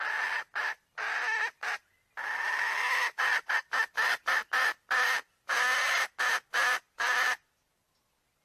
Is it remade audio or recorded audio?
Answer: recorded